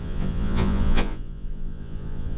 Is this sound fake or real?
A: fake